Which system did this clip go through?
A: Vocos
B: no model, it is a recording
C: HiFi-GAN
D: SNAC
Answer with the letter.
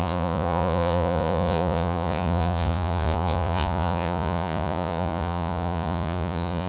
A